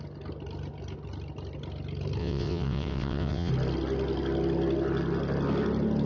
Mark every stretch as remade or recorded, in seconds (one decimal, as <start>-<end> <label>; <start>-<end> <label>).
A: 0.0-2.2 recorded; 2.2-3.5 remade; 3.5-6.1 recorded